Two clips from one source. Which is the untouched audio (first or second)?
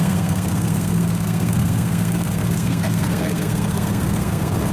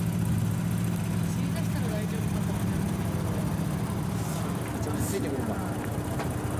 second